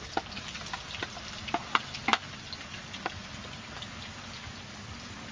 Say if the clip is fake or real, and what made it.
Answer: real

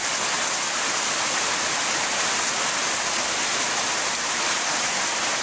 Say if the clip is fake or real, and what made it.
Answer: real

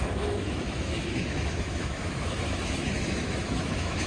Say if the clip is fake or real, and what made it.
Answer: fake, autoencoder, DAC-VAE